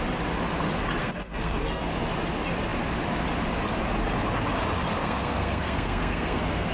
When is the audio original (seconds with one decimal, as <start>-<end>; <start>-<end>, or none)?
0.0-1.0; 1.9-5.0